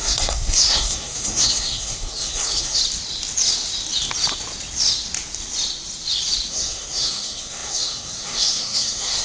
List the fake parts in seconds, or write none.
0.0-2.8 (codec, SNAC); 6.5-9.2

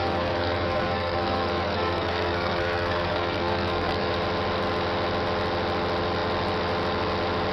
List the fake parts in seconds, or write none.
0.0-4.1 (codec, SNAC)

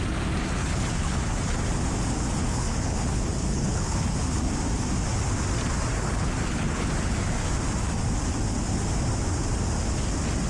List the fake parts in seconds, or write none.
0.6-1.6 (codec, HILCodec); 2.4-4.4; 5.9-6.9

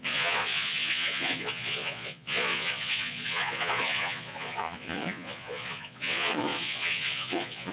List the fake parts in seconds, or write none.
0.0-7.7 (vocoder, Vocos)

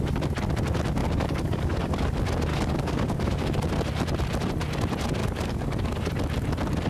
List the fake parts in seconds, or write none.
1.0-2.0 (codec, DAC); 2.5-3.7; 5.2-6.1